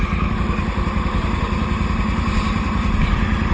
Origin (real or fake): fake